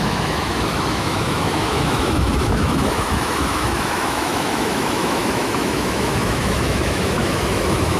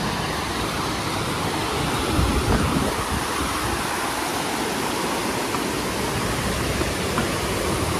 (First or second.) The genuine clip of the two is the second